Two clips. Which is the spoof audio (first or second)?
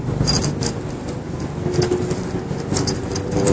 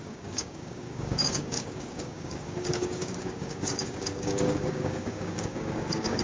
second